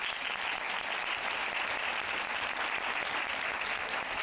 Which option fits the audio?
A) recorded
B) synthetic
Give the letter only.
A